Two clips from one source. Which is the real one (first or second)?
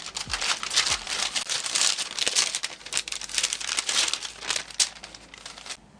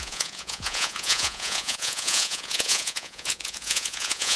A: first